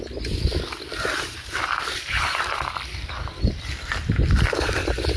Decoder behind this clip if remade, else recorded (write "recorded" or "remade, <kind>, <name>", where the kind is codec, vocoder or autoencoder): recorded